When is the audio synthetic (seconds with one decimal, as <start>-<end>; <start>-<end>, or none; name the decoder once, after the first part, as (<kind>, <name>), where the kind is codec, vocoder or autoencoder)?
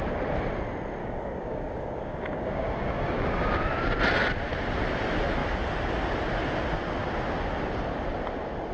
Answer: 1.0-3.6 (codec, DAC)